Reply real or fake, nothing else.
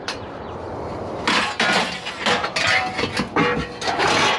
real